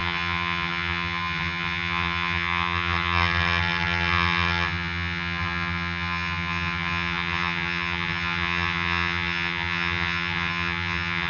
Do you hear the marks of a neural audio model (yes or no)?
yes